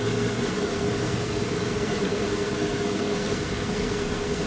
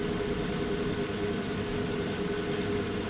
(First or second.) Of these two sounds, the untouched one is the second